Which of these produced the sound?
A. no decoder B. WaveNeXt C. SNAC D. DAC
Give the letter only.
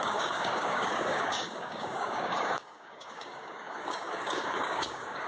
D